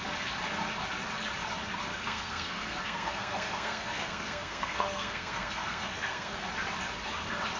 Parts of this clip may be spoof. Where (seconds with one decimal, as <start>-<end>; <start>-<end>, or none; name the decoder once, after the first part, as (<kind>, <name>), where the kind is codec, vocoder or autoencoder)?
1.9-6.5 (codec, SNAC)